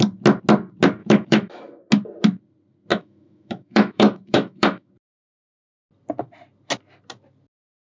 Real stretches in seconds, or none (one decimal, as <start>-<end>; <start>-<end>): 0.0-1.0; 1.6-2.9; 4.9-7.9